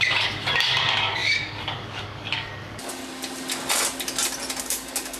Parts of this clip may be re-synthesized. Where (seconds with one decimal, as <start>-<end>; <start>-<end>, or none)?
0.0-3.0; 4.6-5.2